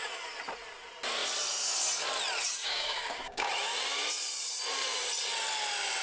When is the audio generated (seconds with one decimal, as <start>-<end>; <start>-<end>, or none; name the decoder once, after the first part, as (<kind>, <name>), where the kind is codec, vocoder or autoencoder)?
2.6-3.5 (codec, DAC)